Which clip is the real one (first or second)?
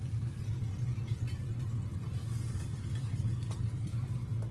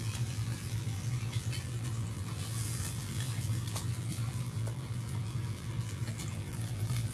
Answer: first